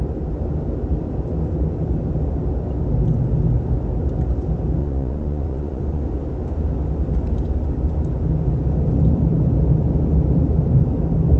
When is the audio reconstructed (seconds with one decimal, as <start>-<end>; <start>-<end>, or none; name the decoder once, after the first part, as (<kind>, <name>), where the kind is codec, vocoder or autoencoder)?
4.8-6.0 (vocoder, Vocos)